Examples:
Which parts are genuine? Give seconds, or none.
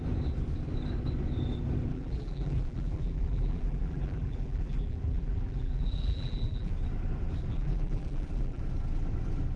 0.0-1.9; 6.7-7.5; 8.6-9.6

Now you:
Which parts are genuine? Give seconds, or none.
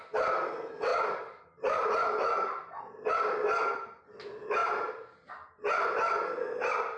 0.0-0.9; 4.0-4.6; 5.3-7.0